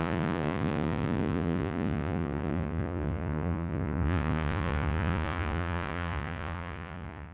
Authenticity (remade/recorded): remade